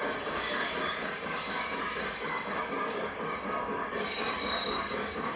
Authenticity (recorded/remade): remade